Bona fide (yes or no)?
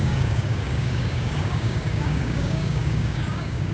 no